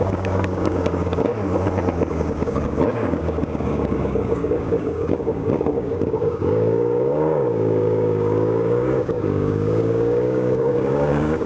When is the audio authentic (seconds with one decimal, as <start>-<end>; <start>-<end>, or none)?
1.3-2.1